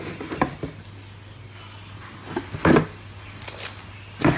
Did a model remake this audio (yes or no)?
no